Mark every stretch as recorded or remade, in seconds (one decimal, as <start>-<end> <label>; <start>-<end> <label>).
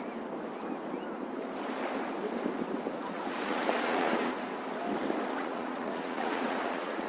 0.0-2.9 recorded; 2.9-4.3 remade; 4.3-5.4 recorded; 5.4-7.1 remade